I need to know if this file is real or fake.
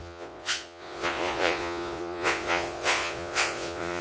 fake